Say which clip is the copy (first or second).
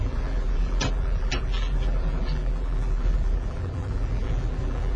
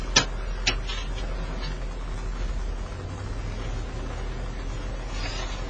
first